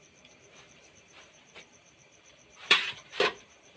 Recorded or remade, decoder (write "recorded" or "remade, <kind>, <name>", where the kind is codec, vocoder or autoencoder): remade, vocoder, BigVGAN v2